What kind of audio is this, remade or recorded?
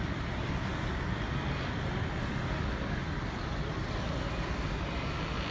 recorded